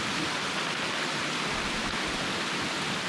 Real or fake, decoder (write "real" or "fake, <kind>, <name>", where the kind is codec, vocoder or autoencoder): real